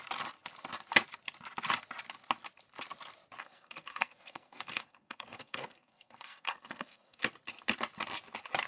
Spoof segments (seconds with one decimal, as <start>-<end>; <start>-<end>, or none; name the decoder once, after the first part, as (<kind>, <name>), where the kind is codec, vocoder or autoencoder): 3.4-7.2 (codec, SNAC)